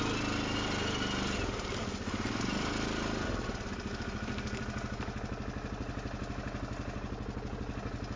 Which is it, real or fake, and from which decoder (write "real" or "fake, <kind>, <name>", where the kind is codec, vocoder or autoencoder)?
real